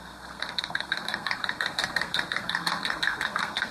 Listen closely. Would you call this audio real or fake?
fake